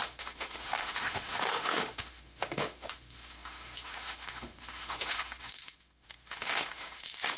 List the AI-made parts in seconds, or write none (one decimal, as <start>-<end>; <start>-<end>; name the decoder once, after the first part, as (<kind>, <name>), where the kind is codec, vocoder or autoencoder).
0.0-7.4 (autoencoder, DAC-VAE)